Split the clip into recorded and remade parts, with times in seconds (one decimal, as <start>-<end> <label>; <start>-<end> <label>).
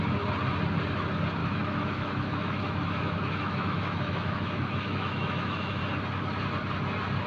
0.0-1.4 recorded; 1.4-5.8 remade; 5.8-7.3 recorded